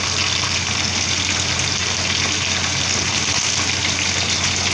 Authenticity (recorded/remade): recorded